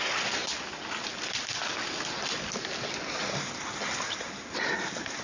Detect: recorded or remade recorded